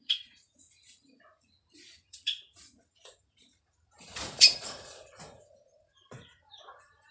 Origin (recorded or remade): remade